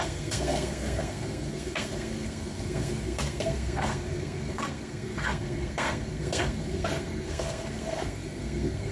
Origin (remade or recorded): remade